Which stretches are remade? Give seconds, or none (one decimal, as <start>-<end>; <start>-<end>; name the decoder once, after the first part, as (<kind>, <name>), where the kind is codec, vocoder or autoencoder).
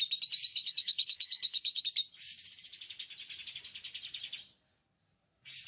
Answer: 0.5-1.8 (codec, HILCodec)